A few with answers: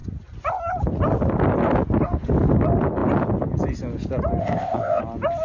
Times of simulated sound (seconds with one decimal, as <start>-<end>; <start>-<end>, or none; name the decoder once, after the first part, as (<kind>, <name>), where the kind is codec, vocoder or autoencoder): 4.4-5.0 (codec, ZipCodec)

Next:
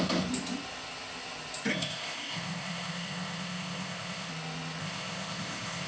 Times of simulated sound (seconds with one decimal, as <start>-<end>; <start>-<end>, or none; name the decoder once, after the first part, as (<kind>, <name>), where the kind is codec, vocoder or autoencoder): 1.7-4.3 (codec, ZipCodec); 4.8-5.9

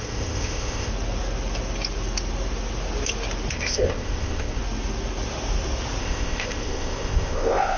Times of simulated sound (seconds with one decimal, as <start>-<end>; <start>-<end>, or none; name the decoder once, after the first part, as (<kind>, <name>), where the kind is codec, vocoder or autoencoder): 0.0-0.9 (codec, ZipCodec); 3.5-4.6; 6.0-7.8